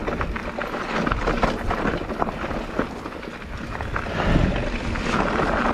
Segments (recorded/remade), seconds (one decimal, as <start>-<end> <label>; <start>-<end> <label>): 0.0-5.7 recorded